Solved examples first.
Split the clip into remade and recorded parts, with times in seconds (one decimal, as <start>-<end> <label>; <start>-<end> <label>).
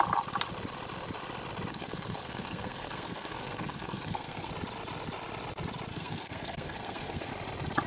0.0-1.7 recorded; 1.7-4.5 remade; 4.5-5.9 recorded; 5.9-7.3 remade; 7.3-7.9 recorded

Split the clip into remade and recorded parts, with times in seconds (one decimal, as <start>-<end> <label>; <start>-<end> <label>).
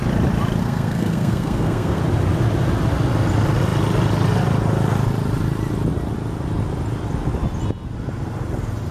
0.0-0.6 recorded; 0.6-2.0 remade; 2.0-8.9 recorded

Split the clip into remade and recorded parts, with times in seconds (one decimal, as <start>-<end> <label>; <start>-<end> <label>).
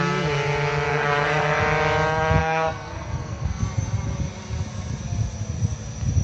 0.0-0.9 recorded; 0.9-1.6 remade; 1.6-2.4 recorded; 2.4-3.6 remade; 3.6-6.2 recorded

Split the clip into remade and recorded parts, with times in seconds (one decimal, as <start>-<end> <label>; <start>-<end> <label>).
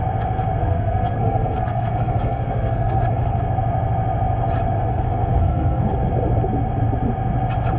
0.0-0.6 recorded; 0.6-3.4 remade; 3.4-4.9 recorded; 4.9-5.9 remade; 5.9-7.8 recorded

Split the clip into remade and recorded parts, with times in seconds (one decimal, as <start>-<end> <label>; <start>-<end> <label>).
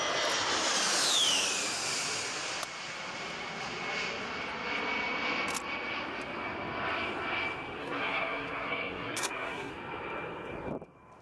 0.0-7.8 recorded; 7.8-9.7 remade; 9.7-11.2 recorded